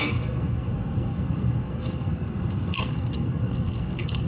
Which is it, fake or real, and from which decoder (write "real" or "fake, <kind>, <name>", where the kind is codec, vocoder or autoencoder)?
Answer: fake, codec, SNAC